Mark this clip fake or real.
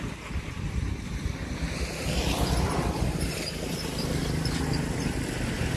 real